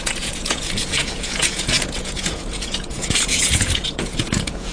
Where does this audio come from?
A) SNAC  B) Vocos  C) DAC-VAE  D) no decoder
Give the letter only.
B